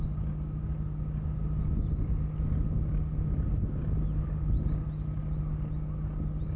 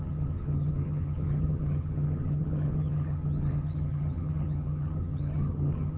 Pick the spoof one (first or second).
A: second